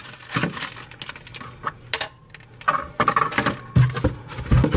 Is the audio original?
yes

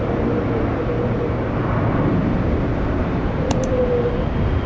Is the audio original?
yes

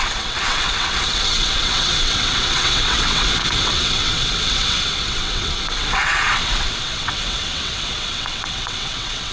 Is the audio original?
no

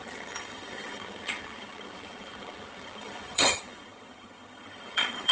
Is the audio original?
no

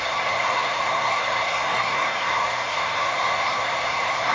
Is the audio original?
no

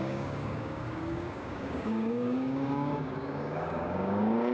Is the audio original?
no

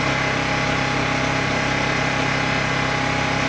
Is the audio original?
yes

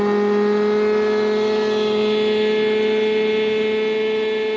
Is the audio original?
yes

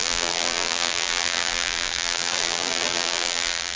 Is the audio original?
no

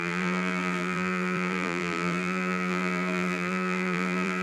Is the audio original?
no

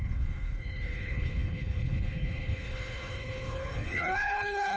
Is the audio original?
no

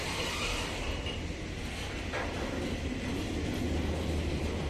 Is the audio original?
yes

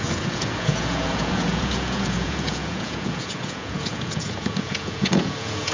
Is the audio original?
no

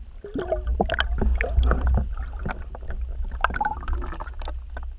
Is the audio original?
yes